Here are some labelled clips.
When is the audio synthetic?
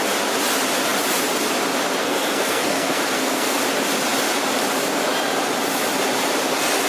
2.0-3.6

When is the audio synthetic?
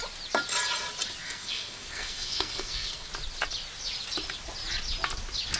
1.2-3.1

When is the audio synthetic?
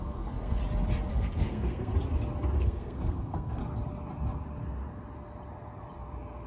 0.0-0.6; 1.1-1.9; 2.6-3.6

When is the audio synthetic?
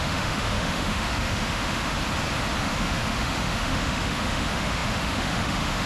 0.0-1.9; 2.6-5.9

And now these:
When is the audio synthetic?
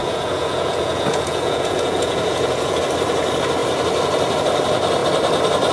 0.0-2.8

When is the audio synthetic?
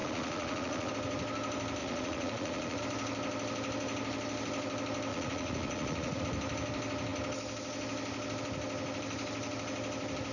0.0-0.9; 1.8-2.8; 5.1-6.2